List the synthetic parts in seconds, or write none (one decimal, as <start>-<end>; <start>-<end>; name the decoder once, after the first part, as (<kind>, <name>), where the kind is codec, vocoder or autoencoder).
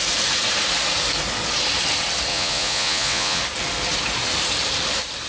2.3-3.4 (vocoder, Vocos)